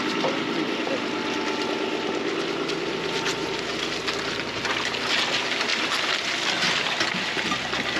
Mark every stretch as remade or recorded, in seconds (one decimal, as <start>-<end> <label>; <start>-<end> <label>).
0.0-8.0 recorded